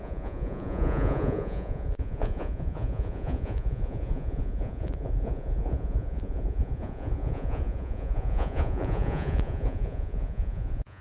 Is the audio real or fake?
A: fake